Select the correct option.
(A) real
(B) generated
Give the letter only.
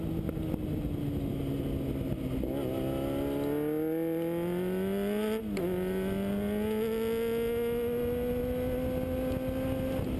A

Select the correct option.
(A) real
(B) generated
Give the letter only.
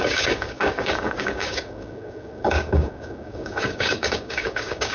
B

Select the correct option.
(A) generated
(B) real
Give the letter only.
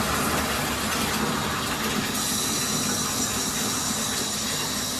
B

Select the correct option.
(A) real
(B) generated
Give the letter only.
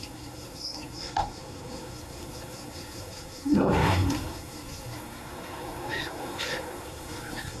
B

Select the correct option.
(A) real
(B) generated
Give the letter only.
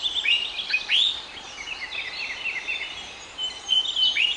B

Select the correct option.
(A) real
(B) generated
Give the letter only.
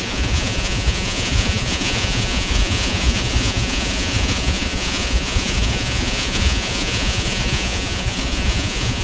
B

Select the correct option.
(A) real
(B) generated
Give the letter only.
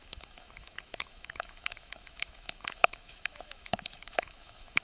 B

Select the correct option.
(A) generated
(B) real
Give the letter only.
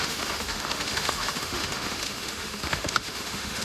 A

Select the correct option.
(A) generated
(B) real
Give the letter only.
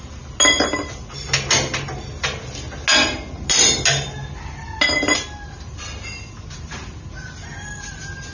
B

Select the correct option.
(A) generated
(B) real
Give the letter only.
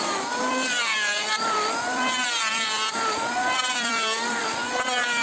A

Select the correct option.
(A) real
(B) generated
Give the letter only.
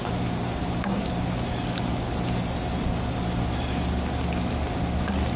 A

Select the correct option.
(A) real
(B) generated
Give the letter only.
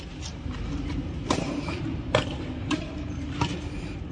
A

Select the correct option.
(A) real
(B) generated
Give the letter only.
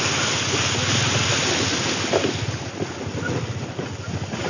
A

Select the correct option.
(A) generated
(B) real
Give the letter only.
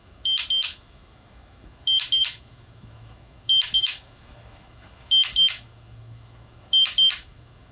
A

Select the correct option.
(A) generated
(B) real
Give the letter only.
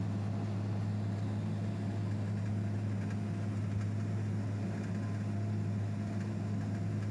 B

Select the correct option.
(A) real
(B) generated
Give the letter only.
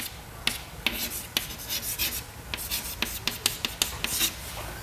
A